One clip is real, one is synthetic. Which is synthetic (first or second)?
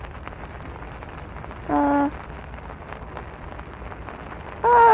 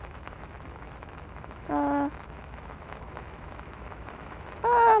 second